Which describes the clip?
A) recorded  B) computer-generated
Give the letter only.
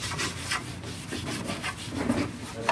A